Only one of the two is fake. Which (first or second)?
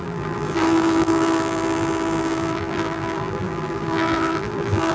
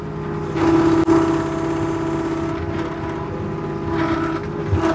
first